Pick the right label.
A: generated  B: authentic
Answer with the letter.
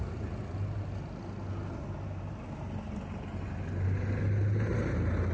B